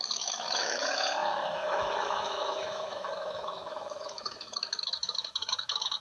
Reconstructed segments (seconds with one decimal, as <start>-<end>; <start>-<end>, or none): 0.0-6.0